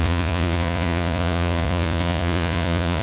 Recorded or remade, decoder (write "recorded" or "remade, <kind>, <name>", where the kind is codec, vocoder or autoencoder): remade, vocoder, Vocos